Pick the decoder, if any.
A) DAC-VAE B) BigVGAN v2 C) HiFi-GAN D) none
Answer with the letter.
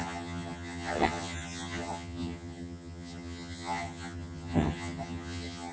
C